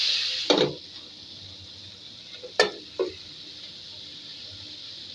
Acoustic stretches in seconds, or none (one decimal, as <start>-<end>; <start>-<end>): 0.0-5.1